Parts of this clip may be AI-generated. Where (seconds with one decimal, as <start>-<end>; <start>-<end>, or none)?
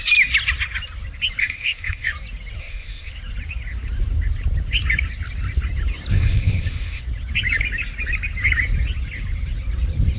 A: 1.4-2.1; 2.6-3.1; 6.1-7.0